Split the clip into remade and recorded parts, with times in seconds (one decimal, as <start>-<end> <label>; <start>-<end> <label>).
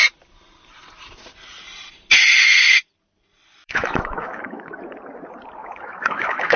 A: 0.0-3.6 recorded; 3.6-4.7 remade; 4.7-5.6 recorded; 5.6-6.6 remade